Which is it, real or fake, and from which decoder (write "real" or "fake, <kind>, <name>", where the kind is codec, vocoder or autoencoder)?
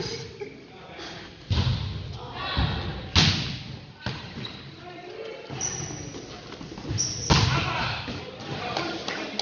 real